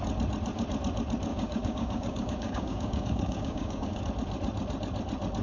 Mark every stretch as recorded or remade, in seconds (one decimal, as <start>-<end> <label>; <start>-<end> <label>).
0.0-1.3 recorded; 1.3-4.0 remade; 4.0-5.4 recorded